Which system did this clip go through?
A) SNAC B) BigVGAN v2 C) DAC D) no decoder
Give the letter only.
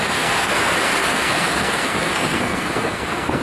A